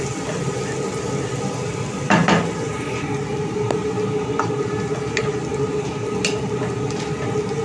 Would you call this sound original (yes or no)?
yes